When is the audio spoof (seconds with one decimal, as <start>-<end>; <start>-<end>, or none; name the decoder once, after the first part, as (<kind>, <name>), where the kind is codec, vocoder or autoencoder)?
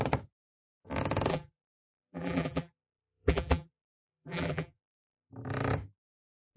1.3-5.3 (vocoder, BigVGAN v2)